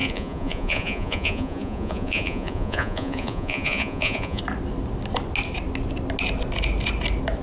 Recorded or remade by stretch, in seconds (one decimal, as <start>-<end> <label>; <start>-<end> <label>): 0.0-4.4 remade; 4.4-7.4 recorded